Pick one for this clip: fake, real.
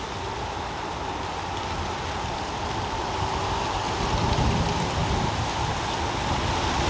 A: real